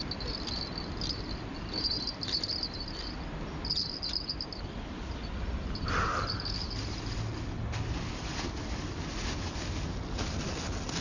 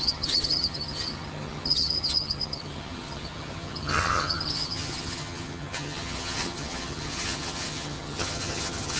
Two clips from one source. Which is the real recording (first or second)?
first